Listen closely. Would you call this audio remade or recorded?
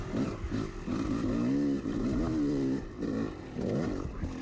recorded